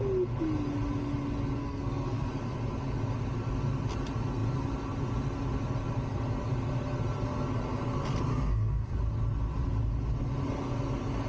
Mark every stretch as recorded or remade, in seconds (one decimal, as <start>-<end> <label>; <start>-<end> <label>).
0.0-1.6 recorded; 1.6-2.3 remade; 2.3-8.3 recorded; 8.3-9.0 remade; 9.0-11.3 recorded